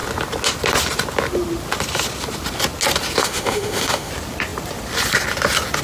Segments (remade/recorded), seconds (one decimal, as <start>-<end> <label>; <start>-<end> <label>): 0.0-3.2 recorded; 3.2-4.1 remade; 4.1-5.8 recorded